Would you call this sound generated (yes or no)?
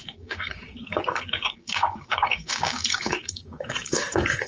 yes